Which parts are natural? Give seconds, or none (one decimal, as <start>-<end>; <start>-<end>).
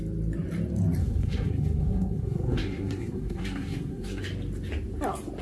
0.0-1.0; 4.2-5.4